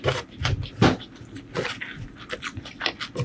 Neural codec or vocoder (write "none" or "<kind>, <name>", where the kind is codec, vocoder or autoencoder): none